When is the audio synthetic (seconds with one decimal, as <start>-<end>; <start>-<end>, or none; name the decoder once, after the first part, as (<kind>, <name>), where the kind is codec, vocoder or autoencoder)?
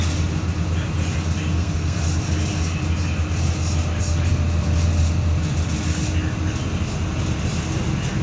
1.5-2.0 (codec, SNAC)